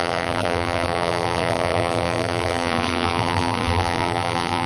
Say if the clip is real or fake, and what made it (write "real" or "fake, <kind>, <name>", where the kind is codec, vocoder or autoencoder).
fake, vocoder, BigVGAN v2